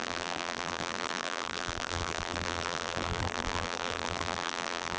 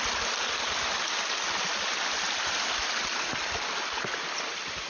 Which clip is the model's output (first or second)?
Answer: first